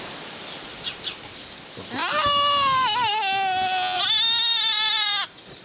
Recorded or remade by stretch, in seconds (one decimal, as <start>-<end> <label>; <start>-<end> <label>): 0.0-0.7 recorded; 0.7-1.5 remade; 1.5-4.5 recorded; 4.5-5.1 remade; 5.1-5.6 recorded